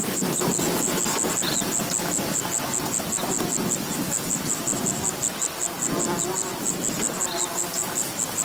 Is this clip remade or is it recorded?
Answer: recorded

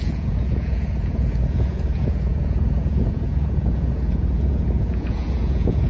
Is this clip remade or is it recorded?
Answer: remade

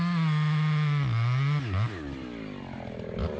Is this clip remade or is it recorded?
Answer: recorded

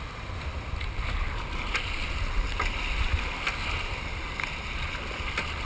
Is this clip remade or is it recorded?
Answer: recorded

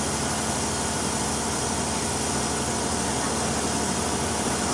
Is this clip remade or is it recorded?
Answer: recorded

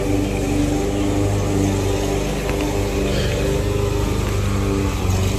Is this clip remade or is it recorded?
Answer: recorded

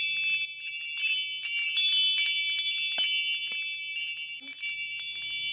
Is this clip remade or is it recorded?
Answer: recorded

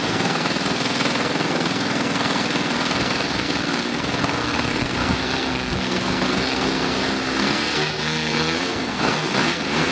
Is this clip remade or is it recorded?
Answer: remade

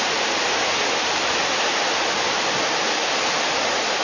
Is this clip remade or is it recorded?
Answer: recorded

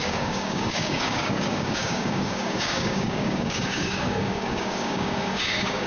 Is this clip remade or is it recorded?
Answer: remade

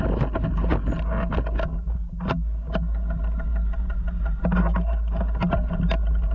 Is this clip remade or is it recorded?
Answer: recorded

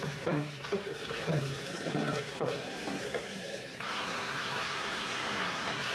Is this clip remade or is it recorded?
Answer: remade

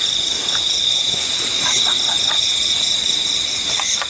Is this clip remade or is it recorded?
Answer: remade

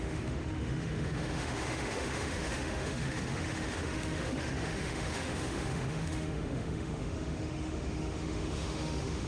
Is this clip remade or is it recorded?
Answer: remade